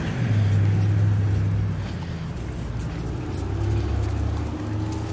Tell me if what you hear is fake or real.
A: real